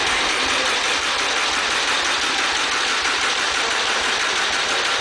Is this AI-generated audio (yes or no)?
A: no